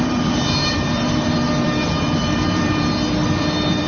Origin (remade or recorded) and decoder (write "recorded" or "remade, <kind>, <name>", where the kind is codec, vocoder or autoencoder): remade, vocoder, BigVGAN v2